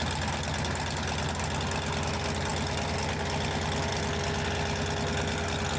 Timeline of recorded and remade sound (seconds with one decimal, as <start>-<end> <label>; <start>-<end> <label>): 0.0-5.8 recorded